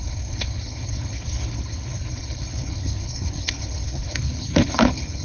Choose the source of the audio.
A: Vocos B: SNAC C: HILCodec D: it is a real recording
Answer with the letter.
C